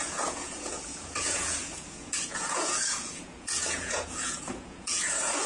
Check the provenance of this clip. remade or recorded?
remade